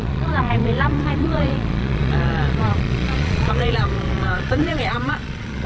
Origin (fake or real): fake